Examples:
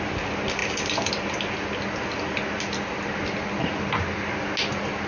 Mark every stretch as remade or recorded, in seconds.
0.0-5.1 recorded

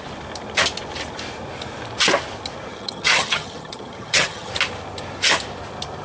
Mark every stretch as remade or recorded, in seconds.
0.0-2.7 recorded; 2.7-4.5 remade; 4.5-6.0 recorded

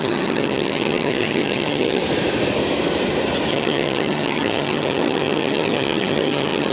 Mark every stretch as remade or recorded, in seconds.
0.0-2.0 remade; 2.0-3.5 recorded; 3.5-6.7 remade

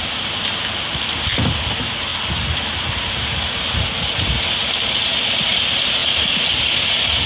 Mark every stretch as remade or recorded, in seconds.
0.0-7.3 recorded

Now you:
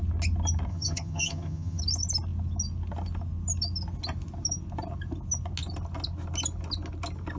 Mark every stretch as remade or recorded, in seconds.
0.0-0.7 recorded; 0.7-1.8 remade; 1.8-7.4 recorded

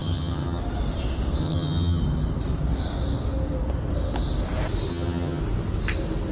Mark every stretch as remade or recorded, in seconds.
0.0-0.6 remade; 0.6-1.4 recorded; 1.4-2.0 remade; 2.0-4.9 recorded; 4.9-5.4 remade; 5.4-6.3 recorded